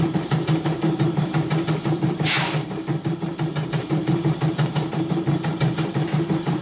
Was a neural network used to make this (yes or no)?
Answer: yes